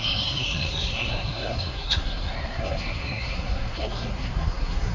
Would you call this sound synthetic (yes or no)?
yes